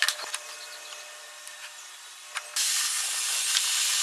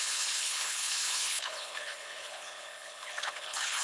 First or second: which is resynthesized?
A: second